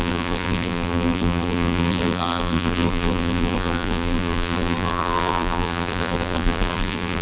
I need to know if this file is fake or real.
fake